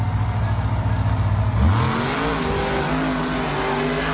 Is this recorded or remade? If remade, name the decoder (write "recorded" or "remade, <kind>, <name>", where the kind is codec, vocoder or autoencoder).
recorded